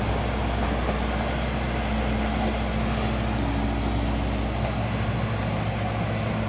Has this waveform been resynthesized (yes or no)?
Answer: no